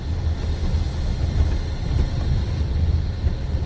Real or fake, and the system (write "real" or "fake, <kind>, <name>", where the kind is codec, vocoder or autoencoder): real